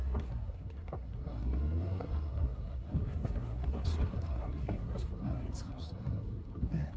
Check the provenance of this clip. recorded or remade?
remade